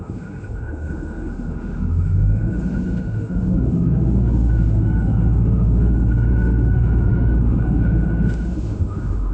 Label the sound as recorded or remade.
remade